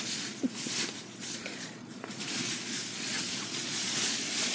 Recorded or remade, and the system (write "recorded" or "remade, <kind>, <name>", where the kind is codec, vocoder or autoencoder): remade, vocoder, Vocos